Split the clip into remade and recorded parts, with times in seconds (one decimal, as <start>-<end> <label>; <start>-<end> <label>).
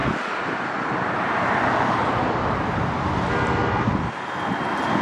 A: 0.0-5.0 recorded